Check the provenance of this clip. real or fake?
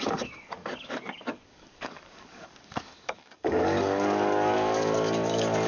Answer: fake